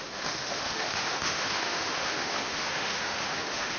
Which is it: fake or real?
fake